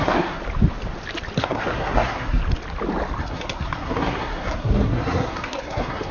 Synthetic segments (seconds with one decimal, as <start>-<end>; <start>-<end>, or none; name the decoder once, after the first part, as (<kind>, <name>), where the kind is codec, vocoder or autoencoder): 0.0-0.4 (codec, SNAC); 1.4-2.4; 3.2-6.1